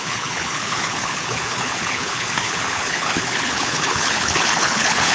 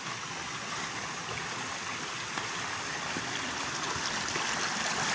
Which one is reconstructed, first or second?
first